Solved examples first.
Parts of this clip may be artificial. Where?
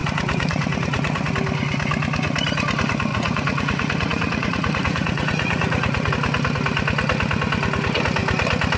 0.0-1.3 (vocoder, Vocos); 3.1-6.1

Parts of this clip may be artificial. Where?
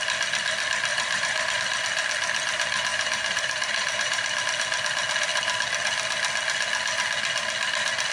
0.9-1.6 (vocoder, BigVGAN v2); 2.9-4.4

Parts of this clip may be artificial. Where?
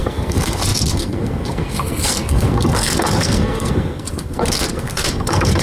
0.0-5.6 (codec, SNAC)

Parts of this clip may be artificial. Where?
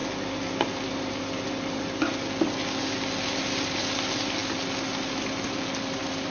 none